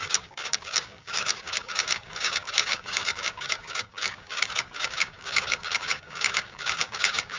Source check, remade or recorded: remade